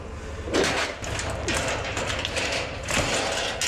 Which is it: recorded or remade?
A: recorded